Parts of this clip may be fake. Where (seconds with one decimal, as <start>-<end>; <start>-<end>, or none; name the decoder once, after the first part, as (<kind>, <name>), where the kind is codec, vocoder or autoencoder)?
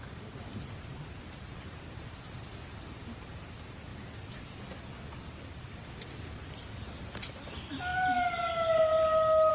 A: none